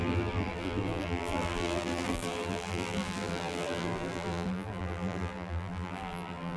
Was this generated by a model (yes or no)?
yes